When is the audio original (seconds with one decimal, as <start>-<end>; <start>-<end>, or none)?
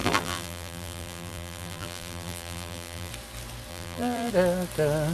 3.1-3.7; 4.3-5.1